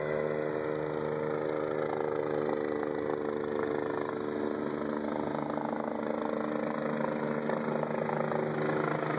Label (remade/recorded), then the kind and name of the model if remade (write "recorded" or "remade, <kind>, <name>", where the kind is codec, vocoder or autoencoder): recorded